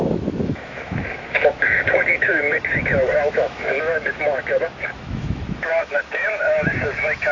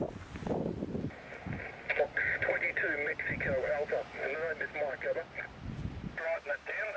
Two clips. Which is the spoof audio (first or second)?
first